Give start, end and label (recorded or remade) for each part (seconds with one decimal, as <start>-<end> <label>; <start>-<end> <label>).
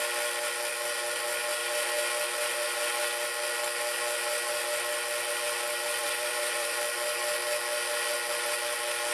0.0-6.0 recorded; 6.0-6.8 remade; 6.8-9.1 recorded